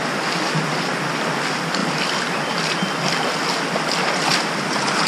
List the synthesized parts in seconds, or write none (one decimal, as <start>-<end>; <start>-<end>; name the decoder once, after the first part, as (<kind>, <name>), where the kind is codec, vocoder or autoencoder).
none